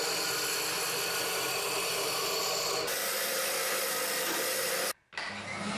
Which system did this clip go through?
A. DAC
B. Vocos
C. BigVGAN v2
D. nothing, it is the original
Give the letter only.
D